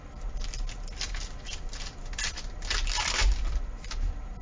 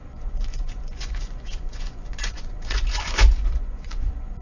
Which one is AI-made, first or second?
second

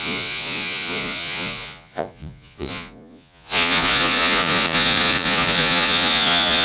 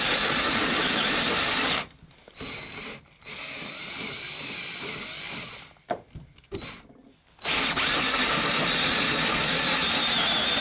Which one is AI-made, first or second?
first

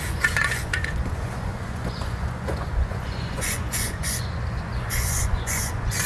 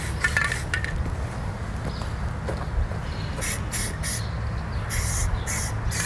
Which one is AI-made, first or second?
first